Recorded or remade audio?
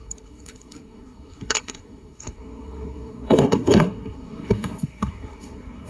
remade